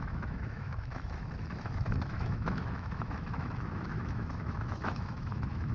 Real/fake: fake